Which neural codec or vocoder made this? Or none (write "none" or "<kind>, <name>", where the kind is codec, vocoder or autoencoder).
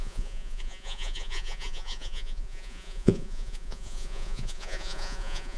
vocoder, Vocos